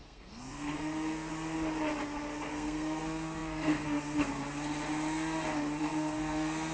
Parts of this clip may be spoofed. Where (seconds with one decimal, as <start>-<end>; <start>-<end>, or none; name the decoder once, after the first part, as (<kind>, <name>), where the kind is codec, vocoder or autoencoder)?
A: 0.0-1.3 (codec, SNAC); 2.5-4.4; 5.8-6.7